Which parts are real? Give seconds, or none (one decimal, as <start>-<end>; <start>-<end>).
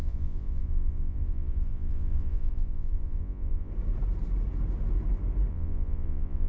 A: 3.7-5.5